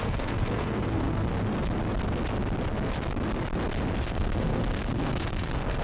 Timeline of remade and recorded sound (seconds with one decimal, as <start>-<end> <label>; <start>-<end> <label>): 0.0-1.3 remade; 1.3-4.0 recorded; 4.0-5.8 remade